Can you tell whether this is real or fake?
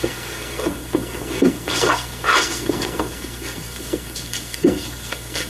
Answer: fake